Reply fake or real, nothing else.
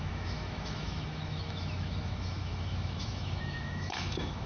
fake